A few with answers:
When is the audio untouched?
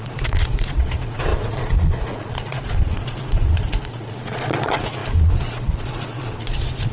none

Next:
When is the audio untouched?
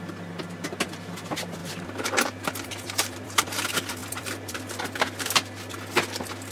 0.0-1.6; 3.4-4.0; 4.8-6.5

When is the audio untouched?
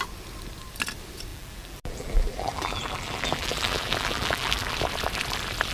0.0-1.3; 4.7-5.7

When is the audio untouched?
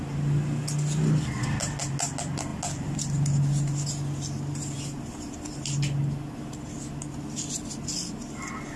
0.0-8.8